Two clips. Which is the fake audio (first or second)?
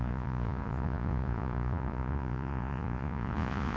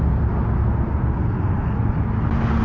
first